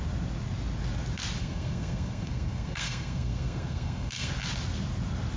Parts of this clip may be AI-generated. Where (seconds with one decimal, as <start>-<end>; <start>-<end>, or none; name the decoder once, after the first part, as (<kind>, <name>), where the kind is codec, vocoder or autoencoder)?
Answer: 1.4-4.3 (codec, SNAC)